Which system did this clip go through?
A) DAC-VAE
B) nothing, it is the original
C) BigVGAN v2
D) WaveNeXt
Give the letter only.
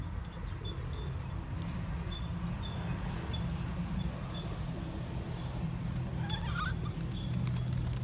B